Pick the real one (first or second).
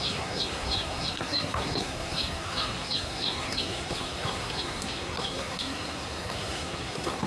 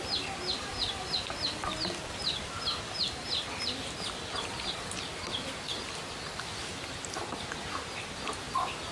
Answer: second